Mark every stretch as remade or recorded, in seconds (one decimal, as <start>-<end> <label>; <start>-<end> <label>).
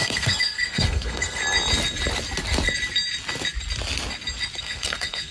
0.0-1.4 remade; 1.4-4.6 recorded; 4.6-5.3 remade